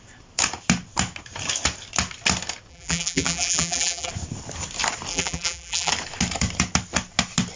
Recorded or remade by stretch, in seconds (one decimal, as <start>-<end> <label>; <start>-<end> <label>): 0.0-2.7 recorded; 2.7-4.1 remade; 4.1-5.1 recorded; 5.1-5.9 remade; 5.9-7.6 recorded